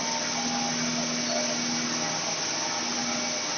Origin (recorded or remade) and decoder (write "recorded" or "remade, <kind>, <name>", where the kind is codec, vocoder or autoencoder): recorded